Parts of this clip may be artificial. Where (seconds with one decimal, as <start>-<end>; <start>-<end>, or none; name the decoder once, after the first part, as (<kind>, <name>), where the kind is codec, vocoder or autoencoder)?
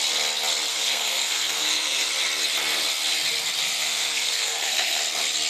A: 0.7-2.1 (codec, SNAC); 3.6-5.0